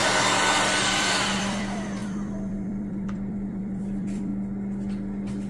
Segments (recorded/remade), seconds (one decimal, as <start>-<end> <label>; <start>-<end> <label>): 0.0-0.8 recorded; 0.8-4.3 remade; 4.3-5.5 recorded